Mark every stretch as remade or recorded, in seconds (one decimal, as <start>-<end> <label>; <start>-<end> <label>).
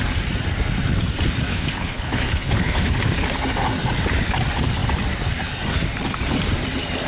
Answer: 0.0-1.5 recorded; 1.5-3.0 remade; 3.0-7.1 recorded